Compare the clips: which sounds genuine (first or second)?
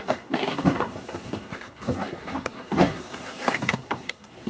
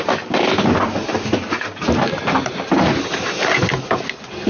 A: second